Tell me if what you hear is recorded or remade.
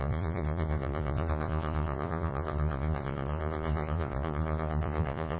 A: remade